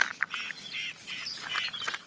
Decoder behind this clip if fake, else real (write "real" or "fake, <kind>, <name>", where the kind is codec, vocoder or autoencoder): real